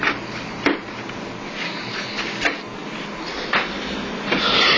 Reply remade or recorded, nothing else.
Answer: recorded